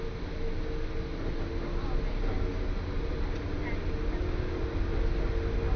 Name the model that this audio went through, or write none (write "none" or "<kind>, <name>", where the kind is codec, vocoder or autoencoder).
none